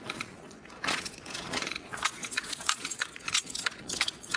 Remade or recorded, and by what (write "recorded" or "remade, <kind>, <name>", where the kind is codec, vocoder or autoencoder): remade, vocoder, Vocos